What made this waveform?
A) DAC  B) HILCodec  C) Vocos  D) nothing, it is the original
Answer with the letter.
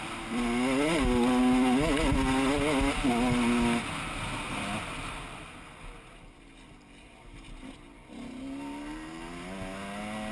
D